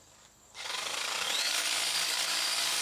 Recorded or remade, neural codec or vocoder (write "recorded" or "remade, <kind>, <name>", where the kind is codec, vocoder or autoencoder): remade, codec, DAC